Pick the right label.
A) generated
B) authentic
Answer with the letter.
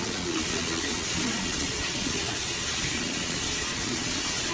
A